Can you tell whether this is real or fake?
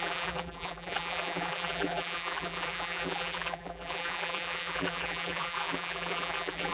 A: fake